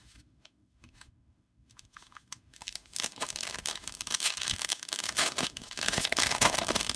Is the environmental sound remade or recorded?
remade